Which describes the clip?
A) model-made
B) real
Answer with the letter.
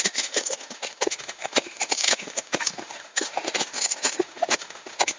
A